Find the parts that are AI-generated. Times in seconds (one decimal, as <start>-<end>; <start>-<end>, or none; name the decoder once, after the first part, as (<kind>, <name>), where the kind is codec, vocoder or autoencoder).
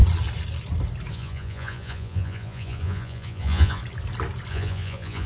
1.1-3.8 (vocoder, Vocos); 4.5-5.3